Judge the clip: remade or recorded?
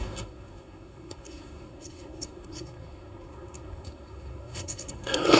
remade